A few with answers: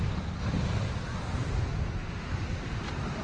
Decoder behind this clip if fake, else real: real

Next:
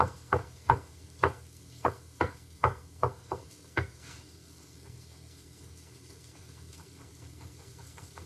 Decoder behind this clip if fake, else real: fake, codec, SNAC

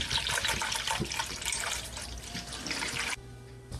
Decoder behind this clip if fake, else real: real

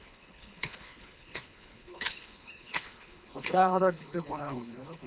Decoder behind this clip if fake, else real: fake, codec, HILCodec